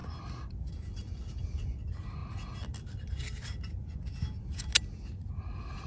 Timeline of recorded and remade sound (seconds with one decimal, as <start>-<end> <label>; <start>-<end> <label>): 0.0-5.9 recorded